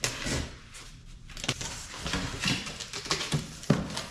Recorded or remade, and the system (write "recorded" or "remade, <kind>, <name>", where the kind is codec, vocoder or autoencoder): recorded